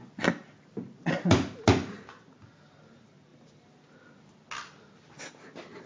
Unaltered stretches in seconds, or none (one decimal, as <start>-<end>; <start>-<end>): 0.0-5.9